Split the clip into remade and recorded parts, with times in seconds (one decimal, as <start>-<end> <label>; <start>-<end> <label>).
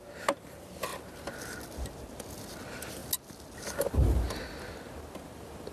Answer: 0.0-5.7 recorded